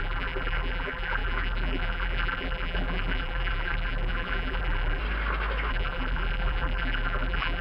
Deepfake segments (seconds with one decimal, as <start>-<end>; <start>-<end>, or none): 0.0-5.0; 5.7-7.6